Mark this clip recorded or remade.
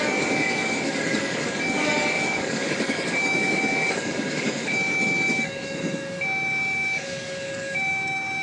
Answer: remade